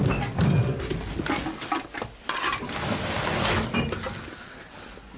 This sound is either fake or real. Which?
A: real